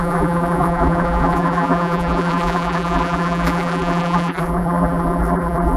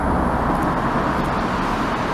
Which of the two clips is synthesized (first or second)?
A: first